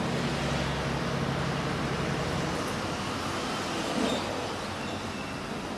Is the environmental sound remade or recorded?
recorded